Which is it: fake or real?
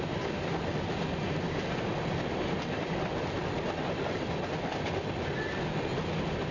real